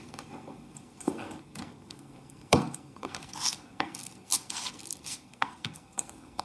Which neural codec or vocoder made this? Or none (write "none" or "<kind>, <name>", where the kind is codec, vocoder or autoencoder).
codec, SNAC